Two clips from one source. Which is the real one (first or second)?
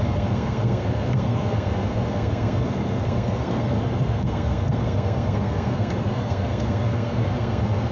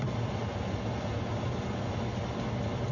second